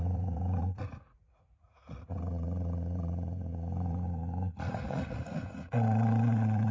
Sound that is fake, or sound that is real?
fake